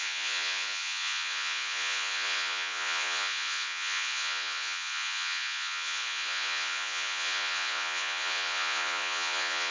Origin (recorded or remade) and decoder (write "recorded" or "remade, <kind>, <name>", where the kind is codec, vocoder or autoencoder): remade, vocoder, Vocos